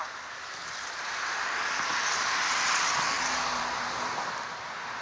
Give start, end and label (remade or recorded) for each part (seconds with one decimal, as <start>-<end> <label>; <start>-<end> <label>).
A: 0.0-0.6 recorded; 0.6-3.6 remade; 3.6-5.0 recorded